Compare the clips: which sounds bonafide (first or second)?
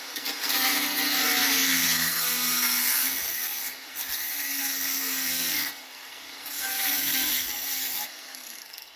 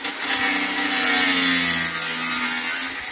second